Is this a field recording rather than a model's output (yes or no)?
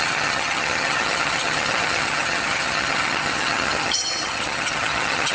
no